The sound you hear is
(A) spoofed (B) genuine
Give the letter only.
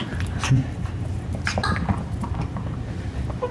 B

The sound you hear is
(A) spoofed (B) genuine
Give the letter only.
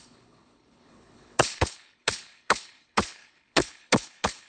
A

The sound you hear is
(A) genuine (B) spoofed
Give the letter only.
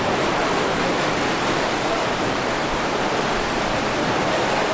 B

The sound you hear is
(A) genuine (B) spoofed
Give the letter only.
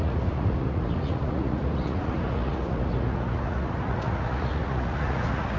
B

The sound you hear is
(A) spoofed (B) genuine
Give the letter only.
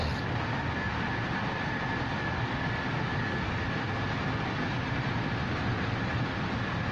B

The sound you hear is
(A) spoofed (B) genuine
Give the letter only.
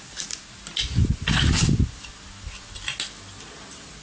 B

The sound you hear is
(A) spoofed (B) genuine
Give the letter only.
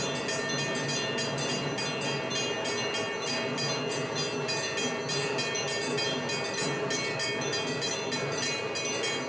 B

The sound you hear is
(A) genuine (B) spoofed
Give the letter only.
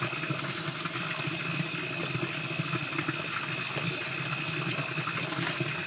A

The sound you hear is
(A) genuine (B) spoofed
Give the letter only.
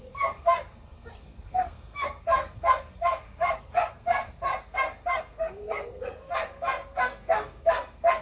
B